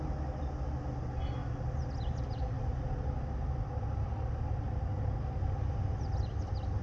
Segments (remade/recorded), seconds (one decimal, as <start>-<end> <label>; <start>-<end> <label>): 0.0-6.8 recorded